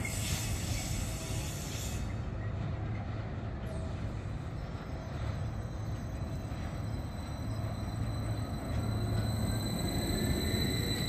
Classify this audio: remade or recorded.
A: recorded